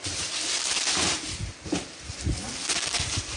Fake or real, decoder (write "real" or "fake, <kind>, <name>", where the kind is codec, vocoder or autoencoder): real